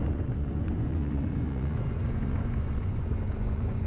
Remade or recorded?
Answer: remade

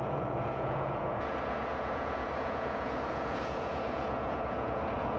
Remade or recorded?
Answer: remade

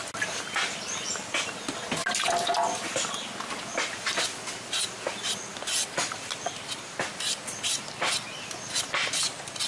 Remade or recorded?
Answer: recorded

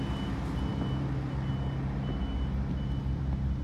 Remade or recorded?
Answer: recorded